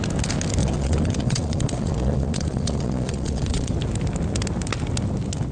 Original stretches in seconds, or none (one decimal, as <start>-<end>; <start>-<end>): 0.0-0.6; 3.7-5.5